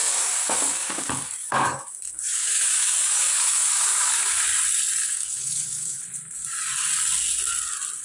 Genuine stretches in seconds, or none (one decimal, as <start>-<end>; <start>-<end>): 4.3-5.0; 6.0-8.0